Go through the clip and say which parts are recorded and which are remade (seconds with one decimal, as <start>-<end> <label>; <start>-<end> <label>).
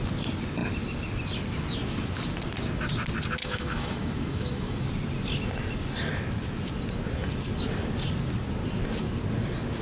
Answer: 0.0-3.4 recorded; 3.4-4.9 remade; 4.9-9.8 recorded